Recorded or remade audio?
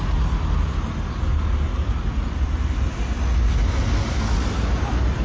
recorded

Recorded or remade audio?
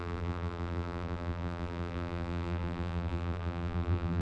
remade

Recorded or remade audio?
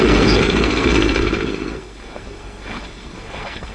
remade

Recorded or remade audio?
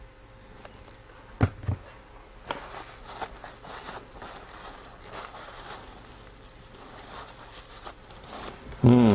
recorded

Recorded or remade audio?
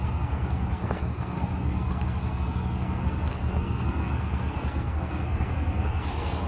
remade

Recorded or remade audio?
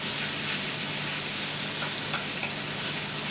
recorded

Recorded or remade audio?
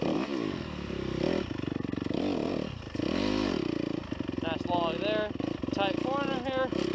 recorded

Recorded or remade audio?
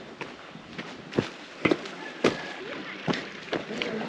recorded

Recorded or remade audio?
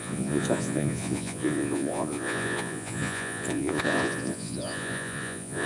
remade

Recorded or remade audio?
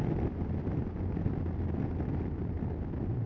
recorded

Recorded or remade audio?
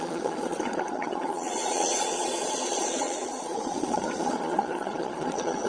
remade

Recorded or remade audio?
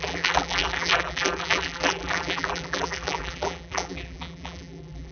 remade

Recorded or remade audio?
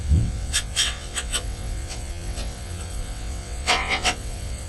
remade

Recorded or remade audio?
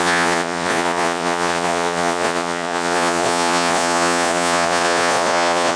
remade